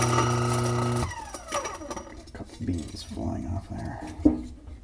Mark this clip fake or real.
real